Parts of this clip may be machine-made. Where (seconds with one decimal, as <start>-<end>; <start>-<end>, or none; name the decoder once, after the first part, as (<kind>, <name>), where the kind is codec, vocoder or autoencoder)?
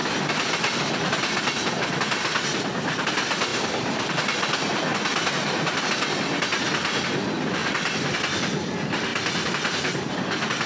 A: 7.6-8.2 (vocoder, BigVGAN v2)